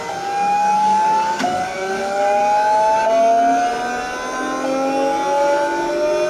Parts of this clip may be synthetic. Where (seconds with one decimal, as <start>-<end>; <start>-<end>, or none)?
0.0-2.4